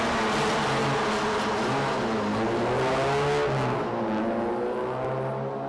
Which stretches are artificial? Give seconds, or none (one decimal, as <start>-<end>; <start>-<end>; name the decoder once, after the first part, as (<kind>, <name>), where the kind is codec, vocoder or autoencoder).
none